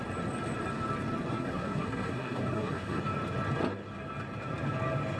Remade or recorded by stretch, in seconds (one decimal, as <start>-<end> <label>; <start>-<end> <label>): 0.0-1.3 recorded; 1.3-3.0 remade; 3.0-5.2 recorded